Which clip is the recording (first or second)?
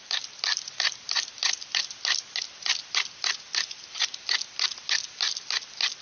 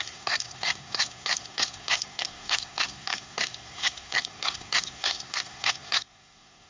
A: first